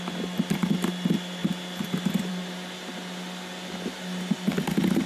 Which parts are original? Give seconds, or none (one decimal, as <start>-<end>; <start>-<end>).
0.0-5.1